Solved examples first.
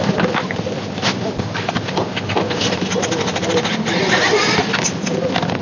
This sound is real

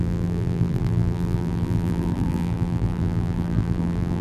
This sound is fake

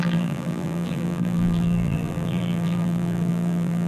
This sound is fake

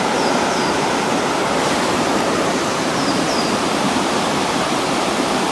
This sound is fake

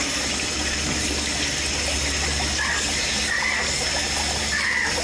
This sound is real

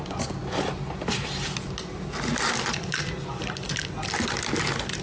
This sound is real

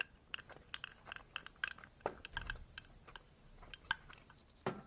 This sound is real